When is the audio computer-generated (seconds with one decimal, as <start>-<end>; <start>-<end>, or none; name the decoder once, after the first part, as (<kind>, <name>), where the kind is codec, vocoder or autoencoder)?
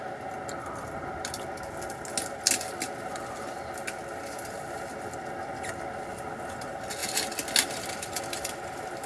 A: none